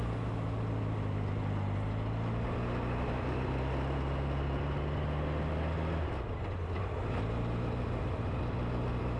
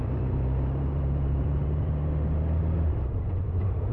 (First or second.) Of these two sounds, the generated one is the second